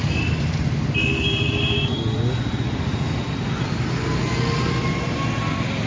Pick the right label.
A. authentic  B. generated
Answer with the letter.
A